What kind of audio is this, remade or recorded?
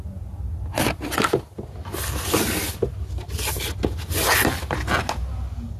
recorded